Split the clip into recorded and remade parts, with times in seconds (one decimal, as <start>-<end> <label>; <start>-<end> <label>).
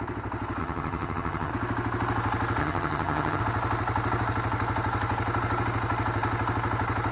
0.0-0.6 recorded; 0.6-1.5 remade; 1.5-2.6 recorded; 2.6-3.4 remade; 3.4-7.1 recorded